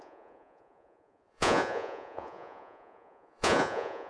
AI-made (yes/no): yes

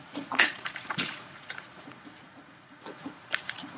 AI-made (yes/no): yes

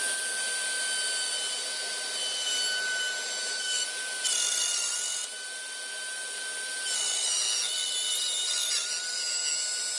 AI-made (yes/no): no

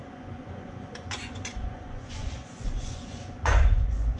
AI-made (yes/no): yes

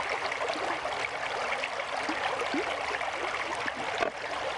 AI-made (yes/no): no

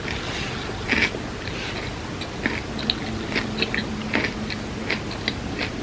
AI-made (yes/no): no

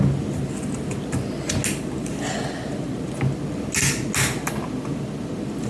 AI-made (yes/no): no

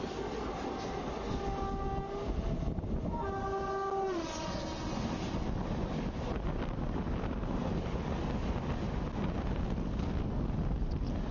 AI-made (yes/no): no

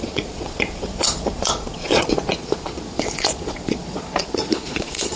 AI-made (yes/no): yes